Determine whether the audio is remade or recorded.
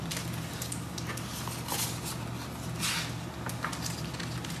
recorded